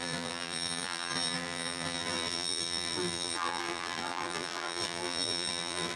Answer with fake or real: fake